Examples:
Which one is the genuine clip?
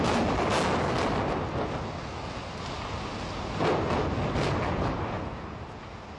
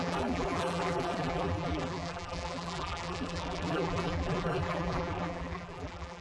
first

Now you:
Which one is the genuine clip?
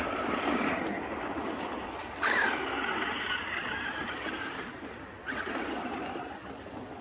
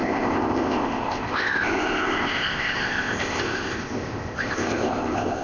first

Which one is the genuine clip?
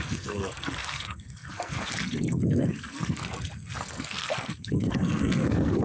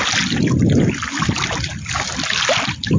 second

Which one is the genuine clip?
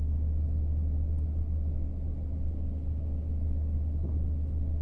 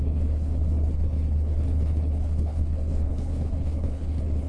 first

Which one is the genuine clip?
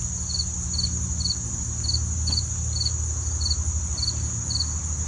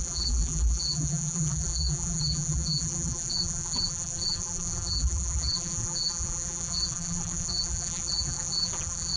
first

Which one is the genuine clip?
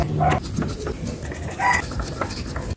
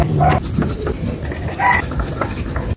first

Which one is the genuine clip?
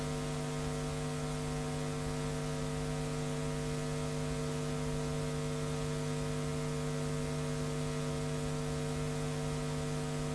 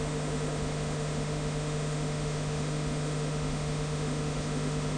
first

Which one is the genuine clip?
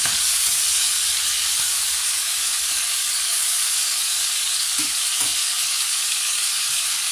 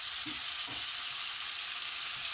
second